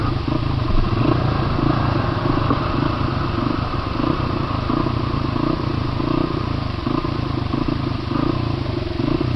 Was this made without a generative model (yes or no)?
yes